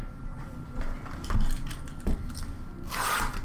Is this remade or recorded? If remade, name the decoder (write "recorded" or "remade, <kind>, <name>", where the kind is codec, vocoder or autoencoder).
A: recorded